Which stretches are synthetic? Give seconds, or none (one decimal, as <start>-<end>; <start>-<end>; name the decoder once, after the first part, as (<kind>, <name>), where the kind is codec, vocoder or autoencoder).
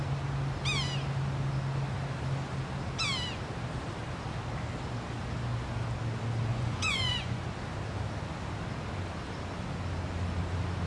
6.5-7.5 (vocoder, Vocos)